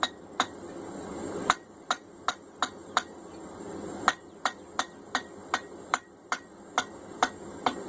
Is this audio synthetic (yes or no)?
yes